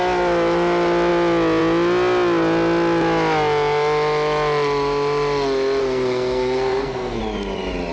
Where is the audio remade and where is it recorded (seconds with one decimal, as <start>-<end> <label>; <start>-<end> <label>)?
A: 0.0-5.8 recorded; 5.8-7.2 remade; 7.2-7.9 recorded